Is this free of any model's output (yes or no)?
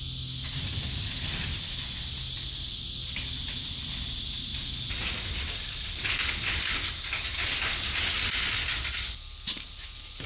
yes